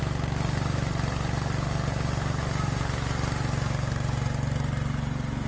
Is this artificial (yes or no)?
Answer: no